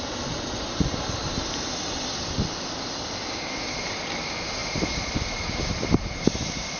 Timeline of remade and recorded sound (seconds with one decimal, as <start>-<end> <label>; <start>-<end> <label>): 0.0-6.8 recorded